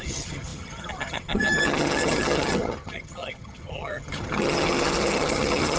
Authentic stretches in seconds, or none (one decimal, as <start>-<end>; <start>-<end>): none